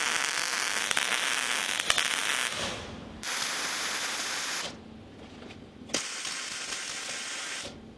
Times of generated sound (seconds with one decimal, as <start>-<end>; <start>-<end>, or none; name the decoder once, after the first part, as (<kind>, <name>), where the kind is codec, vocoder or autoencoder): none